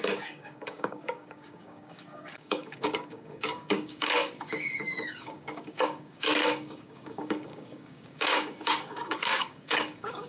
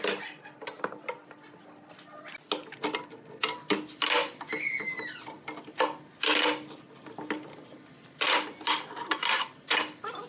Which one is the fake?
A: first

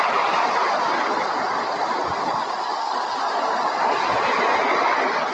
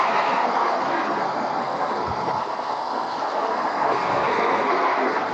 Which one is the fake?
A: second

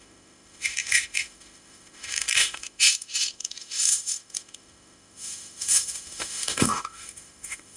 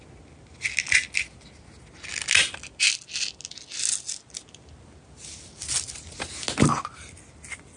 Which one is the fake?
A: first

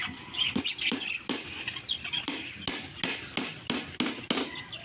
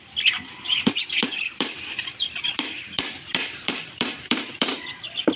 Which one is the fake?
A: second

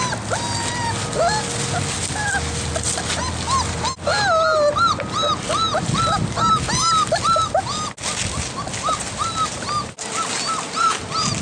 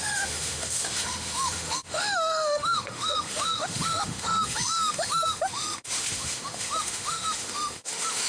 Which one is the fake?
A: second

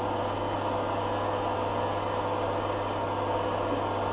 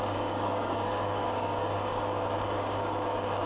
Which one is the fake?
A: second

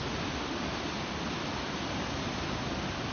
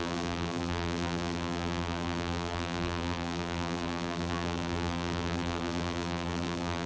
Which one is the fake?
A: second